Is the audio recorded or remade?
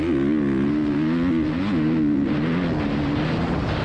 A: recorded